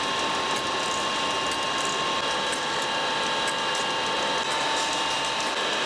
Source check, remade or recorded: recorded